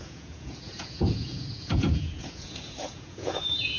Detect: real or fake fake